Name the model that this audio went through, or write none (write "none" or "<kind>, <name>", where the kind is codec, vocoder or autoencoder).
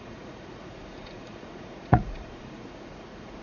vocoder, Vocos